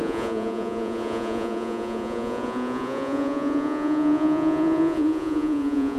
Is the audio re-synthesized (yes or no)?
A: yes